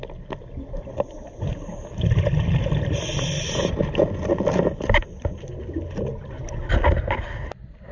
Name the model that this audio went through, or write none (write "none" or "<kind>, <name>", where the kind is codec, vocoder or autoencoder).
none